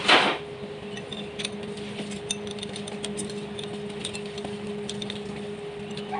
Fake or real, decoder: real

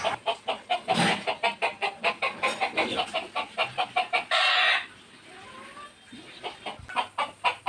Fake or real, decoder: real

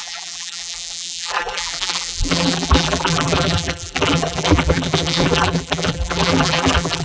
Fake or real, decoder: fake, vocoder, BigVGAN v2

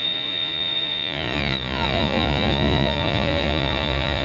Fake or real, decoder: fake, vocoder, Vocos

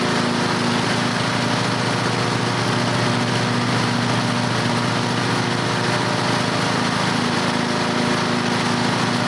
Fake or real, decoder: real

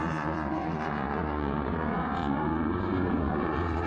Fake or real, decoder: fake, vocoder, Vocos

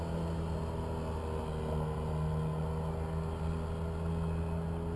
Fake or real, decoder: real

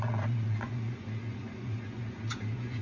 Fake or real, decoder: fake, vocoder, Vocos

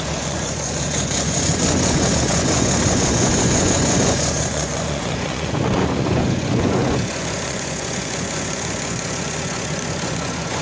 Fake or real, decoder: fake, vocoder, Vocos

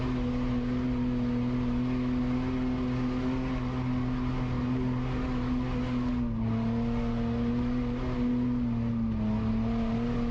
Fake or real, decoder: real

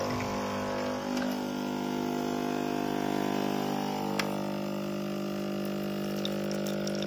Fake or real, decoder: real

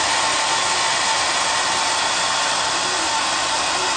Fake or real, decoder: real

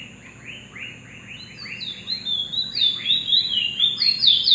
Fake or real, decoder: real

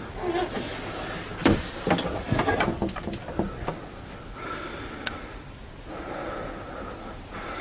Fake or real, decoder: real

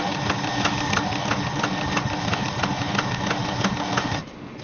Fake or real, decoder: real